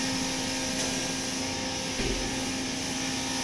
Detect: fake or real real